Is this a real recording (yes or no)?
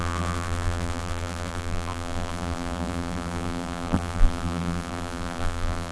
no